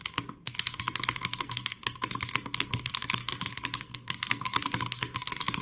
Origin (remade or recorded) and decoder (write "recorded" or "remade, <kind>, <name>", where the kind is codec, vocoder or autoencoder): remade, codec, SNAC